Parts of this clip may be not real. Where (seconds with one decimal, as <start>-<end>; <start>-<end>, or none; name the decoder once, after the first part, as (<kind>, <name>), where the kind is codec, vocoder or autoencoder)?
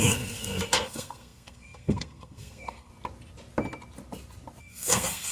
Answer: 0.0-2.9 (codec, SNAC); 4.6-5.3